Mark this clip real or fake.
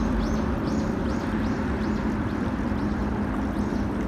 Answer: real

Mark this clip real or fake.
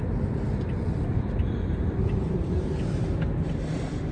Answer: real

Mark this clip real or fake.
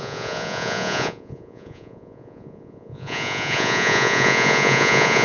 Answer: fake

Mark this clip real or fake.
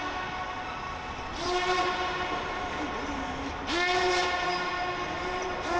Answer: real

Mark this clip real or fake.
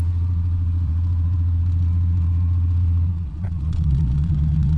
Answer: fake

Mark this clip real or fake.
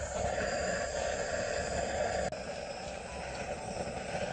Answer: real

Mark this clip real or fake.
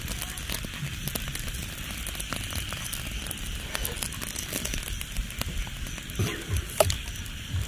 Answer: real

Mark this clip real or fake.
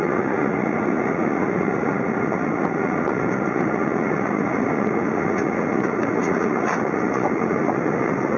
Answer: fake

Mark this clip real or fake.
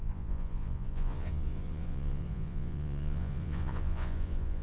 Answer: fake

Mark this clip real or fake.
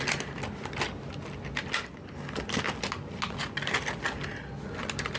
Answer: real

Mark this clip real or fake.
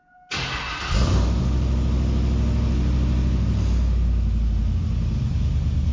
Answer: real